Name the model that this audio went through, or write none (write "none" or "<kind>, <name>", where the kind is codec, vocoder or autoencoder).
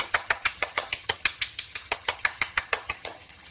vocoder, HiFi-GAN